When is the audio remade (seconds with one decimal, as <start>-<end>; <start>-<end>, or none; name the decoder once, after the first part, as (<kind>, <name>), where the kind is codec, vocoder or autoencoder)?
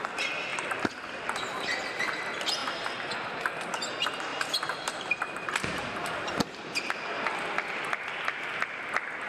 4.3-7.3 (vocoder, BigVGAN v2)